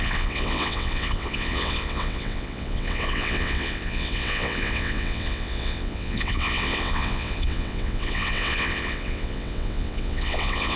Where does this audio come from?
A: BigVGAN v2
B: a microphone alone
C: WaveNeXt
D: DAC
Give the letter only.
C